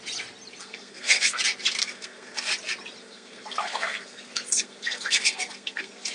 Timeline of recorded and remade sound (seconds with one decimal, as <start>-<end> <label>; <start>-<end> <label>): 0.0-0.6 recorded; 0.6-1.4 remade; 1.4-1.8 recorded; 1.8-2.5 remade; 2.5-3.0 recorded; 3.0-6.1 remade